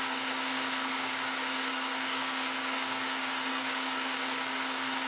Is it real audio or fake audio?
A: fake